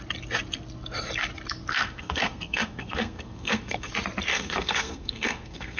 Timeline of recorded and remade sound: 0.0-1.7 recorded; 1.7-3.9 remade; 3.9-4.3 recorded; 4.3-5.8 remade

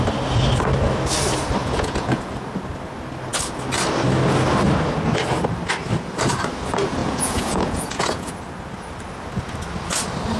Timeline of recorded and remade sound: 0.0-1.6 recorded; 1.6-2.2 remade; 2.2-7.0 recorded; 7.0-8.3 remade; 8.3-10.4 recorded